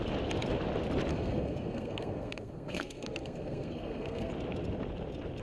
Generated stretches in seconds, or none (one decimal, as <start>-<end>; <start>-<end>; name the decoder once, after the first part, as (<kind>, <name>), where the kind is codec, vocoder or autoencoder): 1.1-4.3 (codec, SNAC)